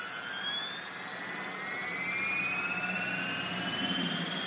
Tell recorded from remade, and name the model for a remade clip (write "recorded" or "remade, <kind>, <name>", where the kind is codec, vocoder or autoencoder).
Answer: recorded